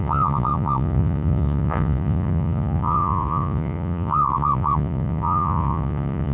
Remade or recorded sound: remade